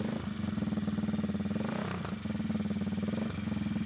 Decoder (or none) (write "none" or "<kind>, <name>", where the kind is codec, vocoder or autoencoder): none